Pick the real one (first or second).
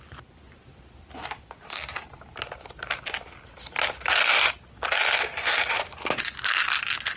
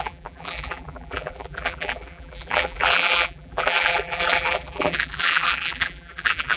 first